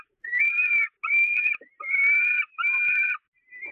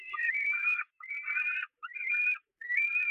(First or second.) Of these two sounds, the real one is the first